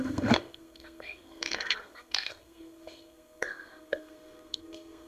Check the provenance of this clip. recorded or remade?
remade